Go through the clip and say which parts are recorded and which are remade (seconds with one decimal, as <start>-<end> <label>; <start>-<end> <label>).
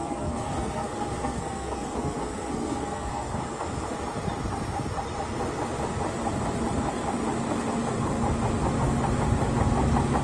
0.0-3.4 remade; 3.4-10.2 recorded